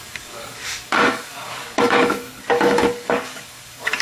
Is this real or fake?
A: fake